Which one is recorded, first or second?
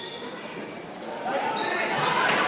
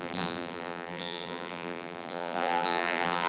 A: first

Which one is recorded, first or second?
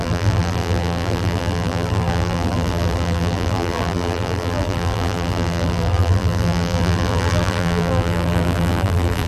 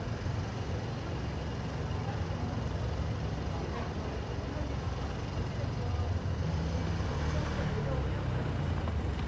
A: second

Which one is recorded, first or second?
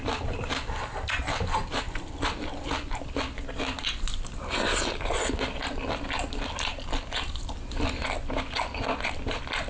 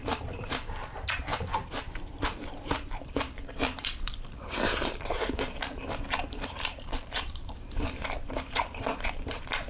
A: first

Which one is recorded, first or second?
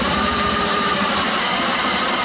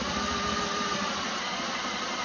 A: second